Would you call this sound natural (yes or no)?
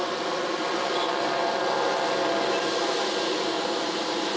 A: yes